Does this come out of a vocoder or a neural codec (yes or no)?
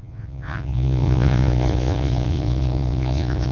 yes